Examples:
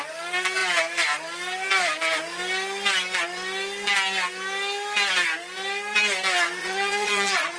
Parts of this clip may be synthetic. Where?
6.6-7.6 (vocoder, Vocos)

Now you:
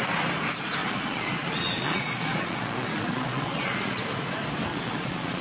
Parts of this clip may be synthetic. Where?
0.8-4.0 (vocoder, Vocos); 4.7-5.4